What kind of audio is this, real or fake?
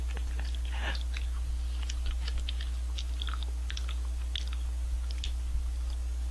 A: real